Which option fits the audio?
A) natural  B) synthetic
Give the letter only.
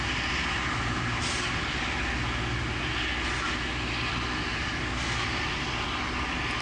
A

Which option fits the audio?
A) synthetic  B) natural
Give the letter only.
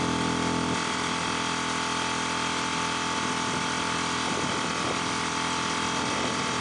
B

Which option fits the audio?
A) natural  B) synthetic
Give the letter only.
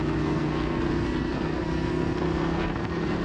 B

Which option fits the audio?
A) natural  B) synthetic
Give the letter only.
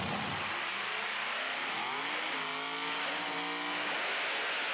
A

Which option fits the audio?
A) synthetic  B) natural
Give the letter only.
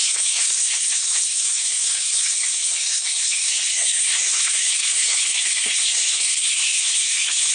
A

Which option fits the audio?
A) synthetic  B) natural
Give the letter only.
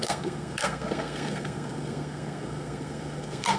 A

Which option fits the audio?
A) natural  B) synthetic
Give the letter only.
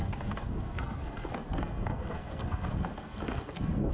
B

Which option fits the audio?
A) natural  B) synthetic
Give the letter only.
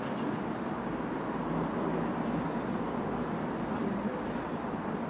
A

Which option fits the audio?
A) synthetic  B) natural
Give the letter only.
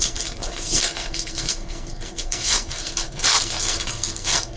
A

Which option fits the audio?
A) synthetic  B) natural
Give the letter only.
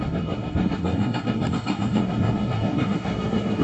A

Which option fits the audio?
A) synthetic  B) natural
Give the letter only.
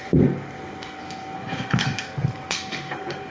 A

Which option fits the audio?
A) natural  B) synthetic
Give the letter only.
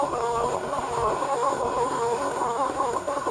B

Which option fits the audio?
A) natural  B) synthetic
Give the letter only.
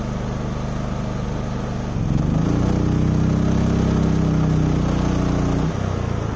A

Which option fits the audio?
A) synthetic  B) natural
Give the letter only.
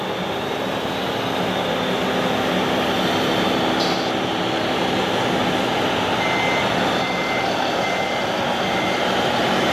B